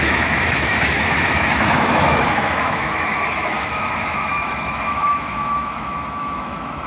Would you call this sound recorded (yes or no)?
no